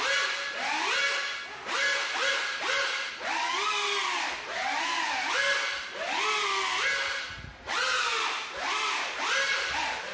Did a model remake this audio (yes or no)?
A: no